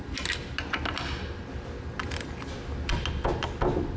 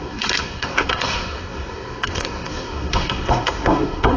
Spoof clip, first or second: second